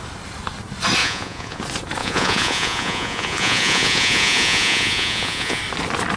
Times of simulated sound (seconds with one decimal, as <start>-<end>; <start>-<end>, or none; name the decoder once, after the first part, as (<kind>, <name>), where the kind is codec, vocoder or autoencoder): 1.0-1.6 (vocoder, Vocos); 2.0-5.6